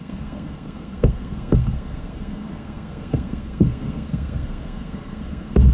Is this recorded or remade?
remade